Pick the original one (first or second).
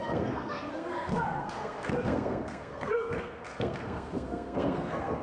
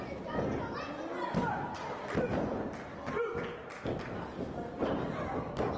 second